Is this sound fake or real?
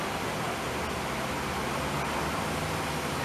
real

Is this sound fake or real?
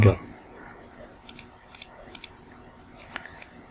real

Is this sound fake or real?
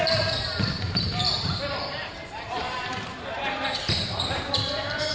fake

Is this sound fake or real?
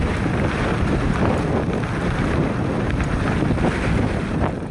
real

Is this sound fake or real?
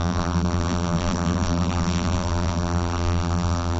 fake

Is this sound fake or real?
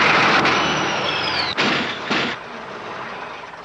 real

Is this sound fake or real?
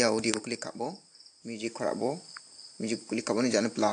fake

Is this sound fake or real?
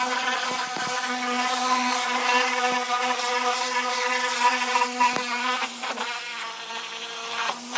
real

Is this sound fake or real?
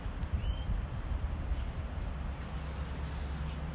real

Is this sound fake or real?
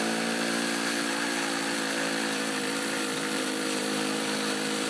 fake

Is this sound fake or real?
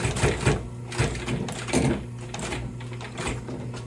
real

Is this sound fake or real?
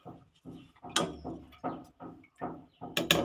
real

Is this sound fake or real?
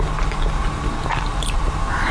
real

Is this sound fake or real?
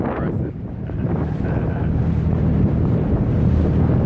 fake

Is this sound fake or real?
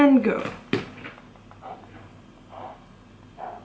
real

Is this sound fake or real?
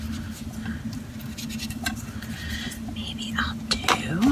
real